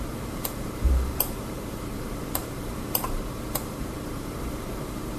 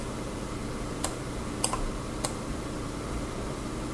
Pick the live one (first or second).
second